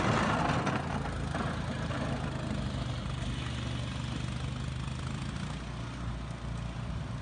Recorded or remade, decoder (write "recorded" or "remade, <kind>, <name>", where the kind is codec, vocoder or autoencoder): recorded